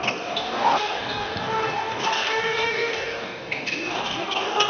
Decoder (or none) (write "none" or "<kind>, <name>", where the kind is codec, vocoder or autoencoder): codec, DAC